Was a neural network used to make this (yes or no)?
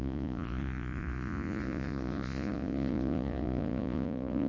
yes